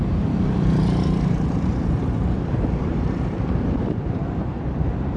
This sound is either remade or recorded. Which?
remade